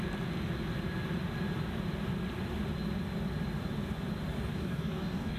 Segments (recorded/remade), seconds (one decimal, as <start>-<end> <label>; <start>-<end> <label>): 0.0-4.5 recorded; 4.5-5.4 remade